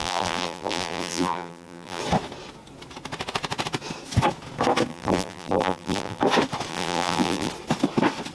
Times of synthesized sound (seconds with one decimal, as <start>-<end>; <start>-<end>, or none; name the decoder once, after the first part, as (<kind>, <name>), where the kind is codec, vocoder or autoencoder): 0.0-2.0 (vocoder, BigVGAN v2); 4.9-6.2; 6.7-7.5